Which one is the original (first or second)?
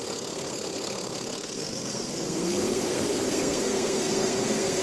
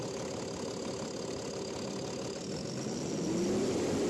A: second